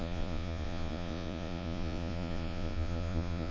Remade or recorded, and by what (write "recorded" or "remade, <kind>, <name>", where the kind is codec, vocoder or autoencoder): remade, vocoder, Vocos